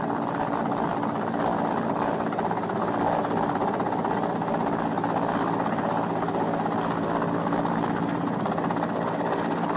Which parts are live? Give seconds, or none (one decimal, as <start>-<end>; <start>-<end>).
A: 0.0-9.8